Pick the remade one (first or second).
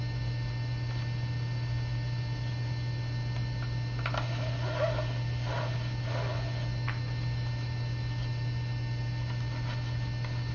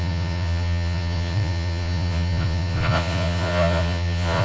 second